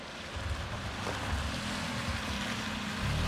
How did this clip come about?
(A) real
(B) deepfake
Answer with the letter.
A